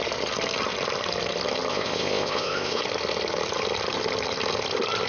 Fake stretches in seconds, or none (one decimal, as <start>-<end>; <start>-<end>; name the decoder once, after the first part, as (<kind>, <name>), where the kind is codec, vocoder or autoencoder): 1.7-2.8 (codec, ZipCodec)